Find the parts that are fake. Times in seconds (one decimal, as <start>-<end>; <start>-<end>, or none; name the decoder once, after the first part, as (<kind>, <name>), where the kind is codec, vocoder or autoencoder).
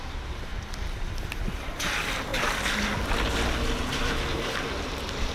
0.0-0.5 (vocoder, BigVGAN v2); 1.2-2.3; 3.8-5.3